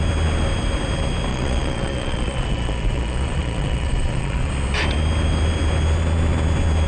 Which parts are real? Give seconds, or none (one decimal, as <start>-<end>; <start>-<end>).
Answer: 0.0-1.3; 4.5-6.9